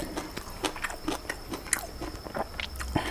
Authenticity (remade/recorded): recorded